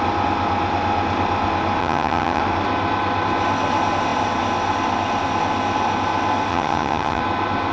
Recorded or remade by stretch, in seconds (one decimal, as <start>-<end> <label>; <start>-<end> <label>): 0.0-1.8 recorded; 1.8-2.4 remade; 2.4-6.5 recorded; 6.5-7.2 remade; 7.2-7.7 recorded